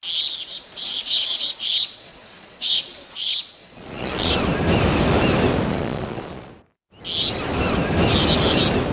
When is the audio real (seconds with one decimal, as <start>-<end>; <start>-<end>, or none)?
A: 0.0-0.5; 4.3-5.7; 6.5-8.9